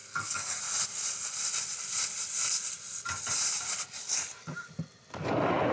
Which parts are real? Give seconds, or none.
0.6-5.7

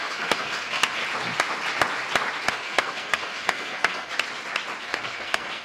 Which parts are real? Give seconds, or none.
1.0-2.5; 4.1-4.8

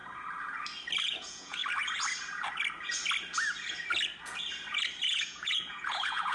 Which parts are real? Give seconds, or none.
0.0-1.0; 1.6-5.1

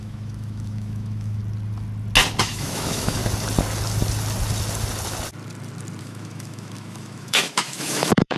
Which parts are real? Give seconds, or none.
1.4-2.4; 3.2-6.0

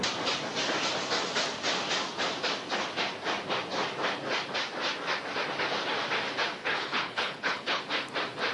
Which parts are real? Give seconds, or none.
0.0-6.6; 7.8-8.5

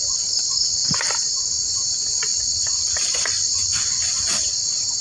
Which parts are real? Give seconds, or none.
0.0-0.8; 1.4-2.3; 3.2-3.6; 4.3-5.0

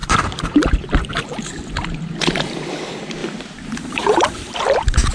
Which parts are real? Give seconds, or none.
1.1-3.2